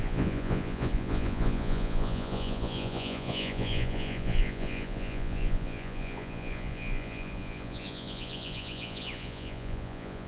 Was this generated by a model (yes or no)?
yes